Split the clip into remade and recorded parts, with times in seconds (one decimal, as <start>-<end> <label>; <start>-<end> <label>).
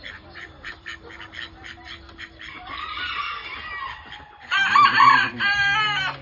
0.0-0.9 remade; 0.9-4.2 recorded; 4.2-6.2 remade